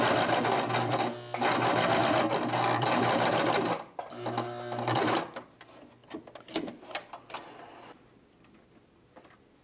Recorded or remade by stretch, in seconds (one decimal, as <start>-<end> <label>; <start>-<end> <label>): 0.0-9.6 recorded